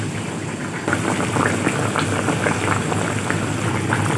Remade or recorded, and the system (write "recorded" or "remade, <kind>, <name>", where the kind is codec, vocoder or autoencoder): recorded